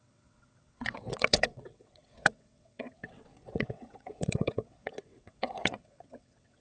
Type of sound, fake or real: fake